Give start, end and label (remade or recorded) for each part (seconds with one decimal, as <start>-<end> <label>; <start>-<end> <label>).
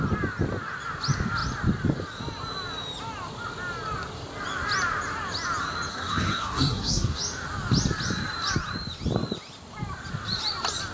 0.0-5.9 recorded; 5.9-7.2 remade; 7.2-10.9 recorded